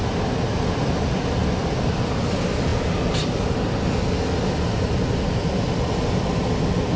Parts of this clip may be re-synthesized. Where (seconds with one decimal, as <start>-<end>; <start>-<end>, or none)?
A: none